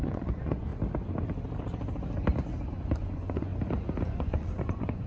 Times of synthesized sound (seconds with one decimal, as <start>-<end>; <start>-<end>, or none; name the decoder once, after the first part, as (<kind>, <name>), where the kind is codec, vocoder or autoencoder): 0.0-0.7 (vocoder, Vocos); 2.7-3.5; 4.2-5.1